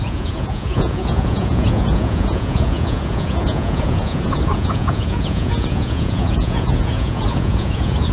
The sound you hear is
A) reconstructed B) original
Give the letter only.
A